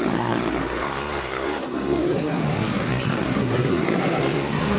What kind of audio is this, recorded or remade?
remade